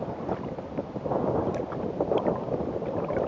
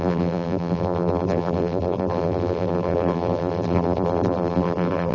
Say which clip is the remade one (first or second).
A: second